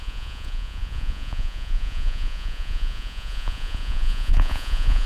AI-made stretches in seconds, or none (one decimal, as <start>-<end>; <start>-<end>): 0.0-5.1